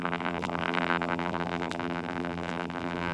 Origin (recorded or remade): remade